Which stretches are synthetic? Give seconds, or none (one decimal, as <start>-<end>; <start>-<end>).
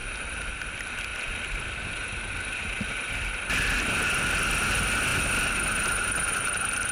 0.0-0.6